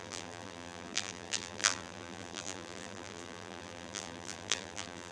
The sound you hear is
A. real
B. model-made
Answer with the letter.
B